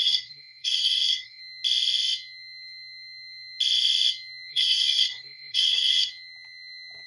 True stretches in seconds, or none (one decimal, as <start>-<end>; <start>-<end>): 1.4-4.5; 6.1-7.1